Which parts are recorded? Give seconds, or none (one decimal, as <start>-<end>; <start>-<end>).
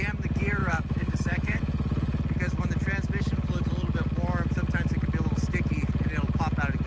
0.0-0.6; 1.6-6.9